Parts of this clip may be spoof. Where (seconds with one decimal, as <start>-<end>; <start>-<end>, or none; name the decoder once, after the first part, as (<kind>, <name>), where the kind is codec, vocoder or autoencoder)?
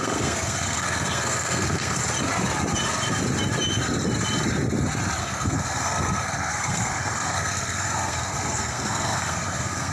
0.0-2.0 (codec, SNAC); 5.2-9.9